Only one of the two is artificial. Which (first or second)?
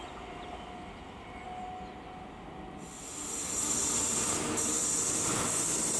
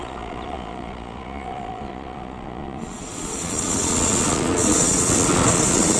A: second